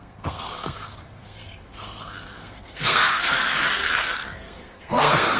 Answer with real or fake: fake